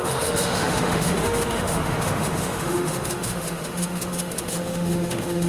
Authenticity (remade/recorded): remade